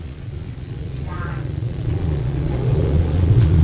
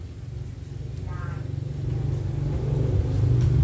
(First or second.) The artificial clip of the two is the first